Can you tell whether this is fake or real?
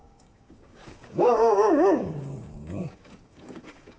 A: fake